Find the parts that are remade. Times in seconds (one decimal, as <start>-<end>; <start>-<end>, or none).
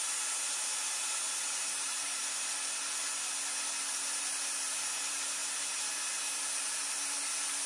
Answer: none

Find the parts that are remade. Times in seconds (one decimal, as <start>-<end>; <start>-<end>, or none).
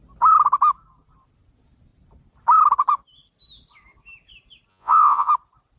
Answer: 4.7-5.3